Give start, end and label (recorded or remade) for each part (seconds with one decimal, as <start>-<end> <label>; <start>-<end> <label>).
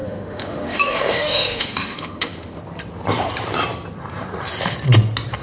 0.0-2.6 remade; 2.6-5.4 recorded